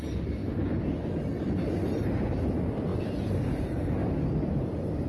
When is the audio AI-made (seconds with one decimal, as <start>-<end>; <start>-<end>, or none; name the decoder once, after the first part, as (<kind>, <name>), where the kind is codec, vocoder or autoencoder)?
4.0-5.1 (vocoder, BigVGAN v2)